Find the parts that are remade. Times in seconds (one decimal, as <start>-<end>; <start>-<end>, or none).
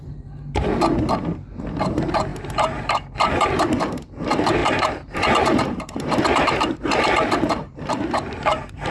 0.0-0.7; 1.8-8.9